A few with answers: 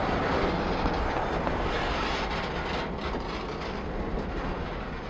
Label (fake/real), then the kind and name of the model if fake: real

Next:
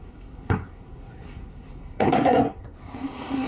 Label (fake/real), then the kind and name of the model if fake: fake, codec, SNAC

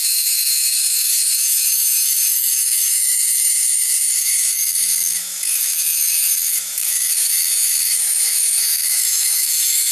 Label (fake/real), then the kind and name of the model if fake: fake, autoencoder, DAC-VAE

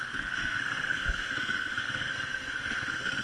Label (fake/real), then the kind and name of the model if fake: fake, codec, SNAC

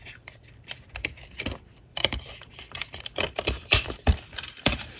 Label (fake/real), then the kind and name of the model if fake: fake, vocoder, BigVGAN v2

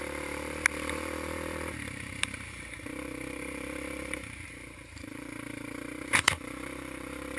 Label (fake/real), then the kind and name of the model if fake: fake, vocoder, BigVGAN v2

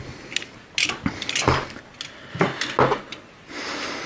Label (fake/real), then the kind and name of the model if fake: real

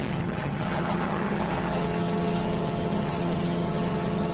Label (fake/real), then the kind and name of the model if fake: fake, vocoder, HiFi-GAN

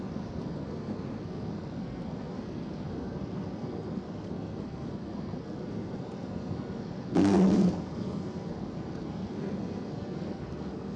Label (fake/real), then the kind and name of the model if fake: fake, codec, SNAC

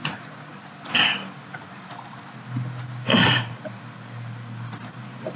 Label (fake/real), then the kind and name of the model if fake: real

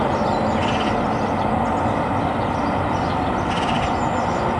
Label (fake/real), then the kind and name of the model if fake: real